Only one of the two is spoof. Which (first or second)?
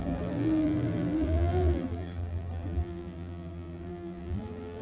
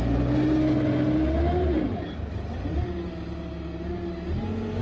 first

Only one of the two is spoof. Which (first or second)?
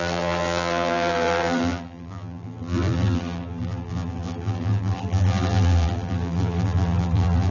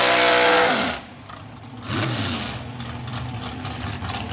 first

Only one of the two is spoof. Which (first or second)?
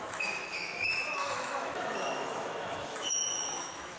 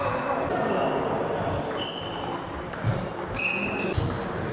first